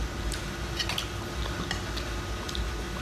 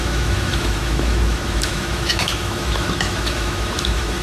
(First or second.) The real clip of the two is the first